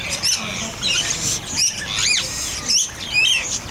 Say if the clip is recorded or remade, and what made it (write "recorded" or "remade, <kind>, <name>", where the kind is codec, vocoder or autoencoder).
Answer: recorded